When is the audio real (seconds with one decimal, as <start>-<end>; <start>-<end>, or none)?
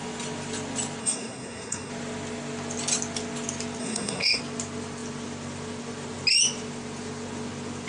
0.0-1.0; 1.9-3.8; 4.4-7.9